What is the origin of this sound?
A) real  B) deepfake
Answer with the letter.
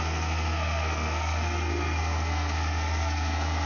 B